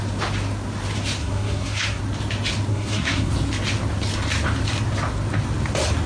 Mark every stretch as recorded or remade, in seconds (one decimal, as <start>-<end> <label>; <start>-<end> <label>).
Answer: 0.0-1.2 recorded; 1.2-2.0 remade; 2.0-2.7 recorded; 2.7-3.3 remade; 3.3-6.1 recorded